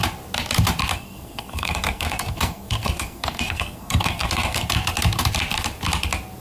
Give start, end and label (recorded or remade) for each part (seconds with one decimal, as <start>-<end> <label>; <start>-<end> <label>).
0.0-0.9 recorded; 0.9-4.7 remade; 4.7-6.4 recorded